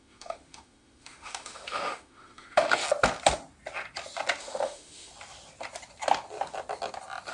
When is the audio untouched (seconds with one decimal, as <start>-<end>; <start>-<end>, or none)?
2.8-4.4; 5.1-7.3